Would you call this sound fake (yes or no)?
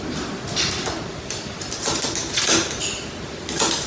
no